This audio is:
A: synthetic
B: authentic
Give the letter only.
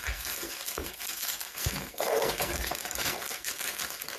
A